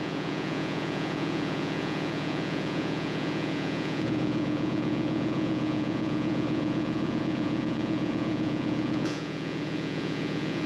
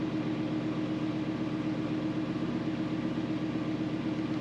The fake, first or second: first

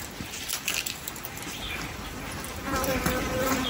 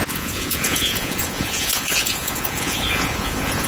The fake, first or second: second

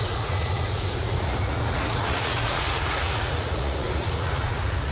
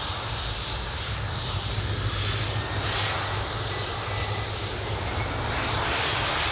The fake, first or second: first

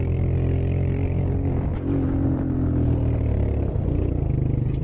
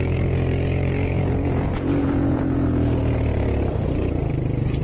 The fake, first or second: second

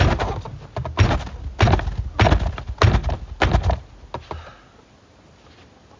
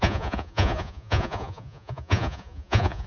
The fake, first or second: second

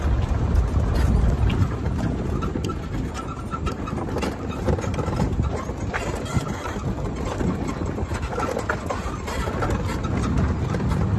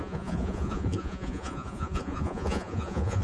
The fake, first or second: second